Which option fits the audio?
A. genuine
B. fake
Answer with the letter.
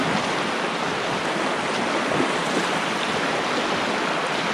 A